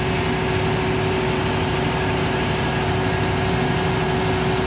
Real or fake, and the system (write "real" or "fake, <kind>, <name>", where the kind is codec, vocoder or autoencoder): real